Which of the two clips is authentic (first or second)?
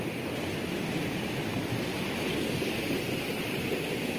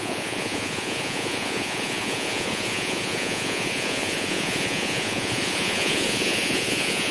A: first